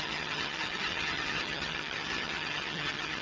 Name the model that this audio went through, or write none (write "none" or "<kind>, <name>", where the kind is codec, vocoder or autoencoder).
vocoder, HiFi-GAN